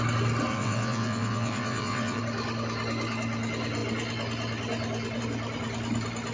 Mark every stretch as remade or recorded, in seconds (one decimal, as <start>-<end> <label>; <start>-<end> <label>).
0.0-0.5 recorded; 0.5-2.2 remade; 2.2-6.3 recorded